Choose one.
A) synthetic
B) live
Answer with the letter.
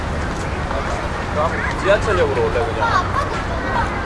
B